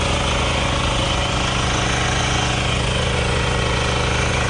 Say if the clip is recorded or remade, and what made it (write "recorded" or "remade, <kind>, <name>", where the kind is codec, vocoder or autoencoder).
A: remade, vocoder, Vocos